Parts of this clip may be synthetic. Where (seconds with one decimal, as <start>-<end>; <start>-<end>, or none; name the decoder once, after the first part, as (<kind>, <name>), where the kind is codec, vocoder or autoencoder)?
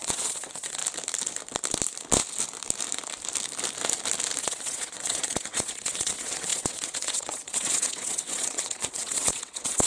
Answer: 0.0-0.8 (vocoder, WaveNeXt); 4.4-9.9